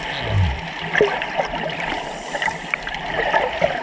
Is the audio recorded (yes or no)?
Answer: yes